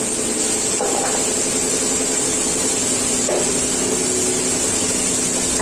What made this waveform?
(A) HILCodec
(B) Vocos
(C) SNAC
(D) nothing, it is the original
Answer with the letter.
D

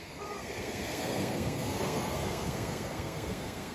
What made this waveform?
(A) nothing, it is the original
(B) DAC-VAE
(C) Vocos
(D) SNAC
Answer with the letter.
D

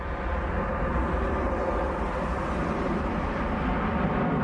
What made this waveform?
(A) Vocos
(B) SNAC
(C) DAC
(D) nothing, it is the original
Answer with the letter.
D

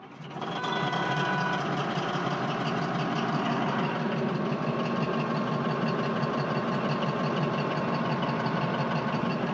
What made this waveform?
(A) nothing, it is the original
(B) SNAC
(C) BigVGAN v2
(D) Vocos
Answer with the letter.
A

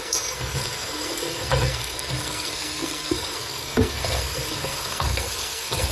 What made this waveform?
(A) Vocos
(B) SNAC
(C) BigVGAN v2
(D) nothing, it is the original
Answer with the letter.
B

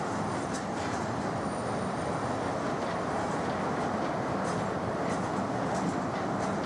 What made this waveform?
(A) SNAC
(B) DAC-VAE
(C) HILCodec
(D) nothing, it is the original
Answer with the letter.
D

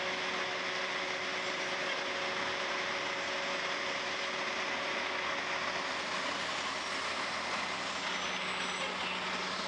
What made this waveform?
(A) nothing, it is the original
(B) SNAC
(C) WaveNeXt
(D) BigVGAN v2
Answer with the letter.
A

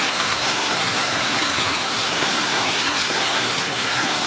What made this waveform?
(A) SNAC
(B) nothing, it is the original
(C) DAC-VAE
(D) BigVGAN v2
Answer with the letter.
A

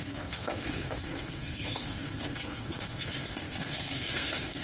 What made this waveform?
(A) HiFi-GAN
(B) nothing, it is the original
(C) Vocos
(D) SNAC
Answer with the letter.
D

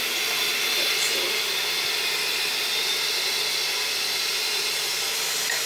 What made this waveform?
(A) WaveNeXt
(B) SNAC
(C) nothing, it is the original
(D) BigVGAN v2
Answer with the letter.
C